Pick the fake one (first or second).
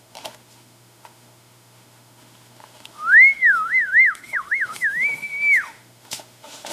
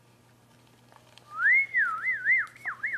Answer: first